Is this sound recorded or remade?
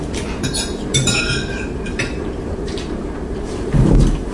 remade